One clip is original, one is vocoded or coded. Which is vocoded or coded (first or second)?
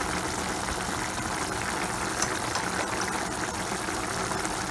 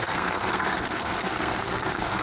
second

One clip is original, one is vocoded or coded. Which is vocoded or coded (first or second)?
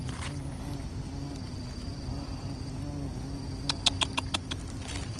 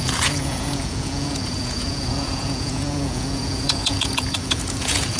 second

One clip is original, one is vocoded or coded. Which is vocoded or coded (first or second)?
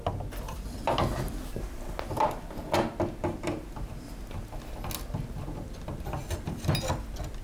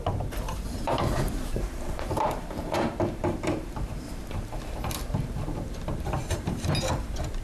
second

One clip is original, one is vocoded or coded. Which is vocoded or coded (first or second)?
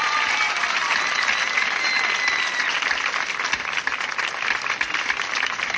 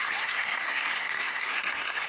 second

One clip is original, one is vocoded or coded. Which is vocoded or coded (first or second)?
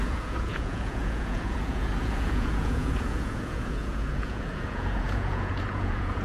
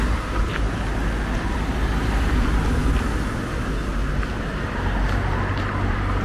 first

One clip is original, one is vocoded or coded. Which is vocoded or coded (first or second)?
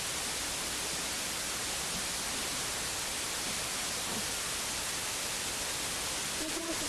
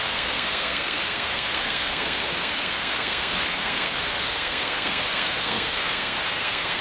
second